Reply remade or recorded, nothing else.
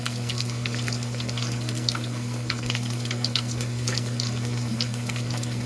remade